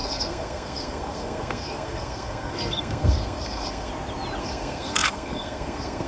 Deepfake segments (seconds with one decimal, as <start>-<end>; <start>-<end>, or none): 0.0-3.9; 4.4-6.1